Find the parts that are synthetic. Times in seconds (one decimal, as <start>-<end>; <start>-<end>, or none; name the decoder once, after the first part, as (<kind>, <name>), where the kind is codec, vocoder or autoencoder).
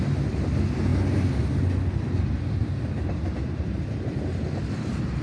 none